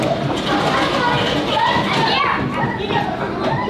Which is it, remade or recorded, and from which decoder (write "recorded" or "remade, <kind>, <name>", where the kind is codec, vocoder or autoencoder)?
recorded